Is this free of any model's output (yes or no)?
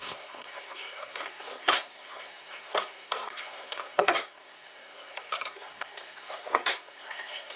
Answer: no